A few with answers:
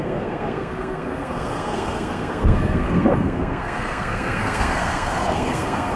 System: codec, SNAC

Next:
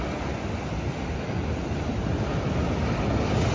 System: none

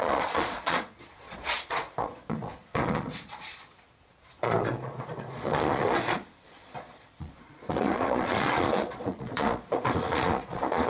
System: vocoder, Vocos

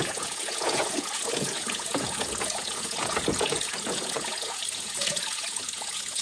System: vocoder, Vocos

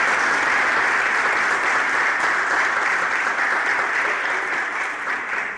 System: none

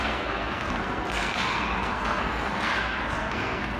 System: codec, SNAC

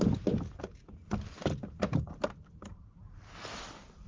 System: none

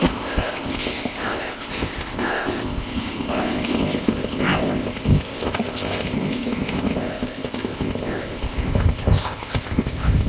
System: codec, ZipCodec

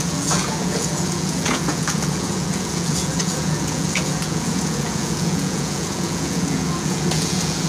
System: vocoder, Vocos